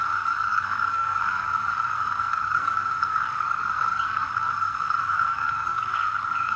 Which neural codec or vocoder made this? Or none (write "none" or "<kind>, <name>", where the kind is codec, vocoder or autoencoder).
codec, SNAC